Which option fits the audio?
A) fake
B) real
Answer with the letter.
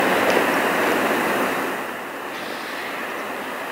B